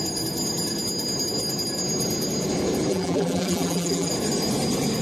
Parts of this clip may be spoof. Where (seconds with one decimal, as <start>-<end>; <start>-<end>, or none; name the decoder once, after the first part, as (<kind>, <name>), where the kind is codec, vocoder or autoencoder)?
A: 2.9-4.1 (vocoder, BigVGAN v2)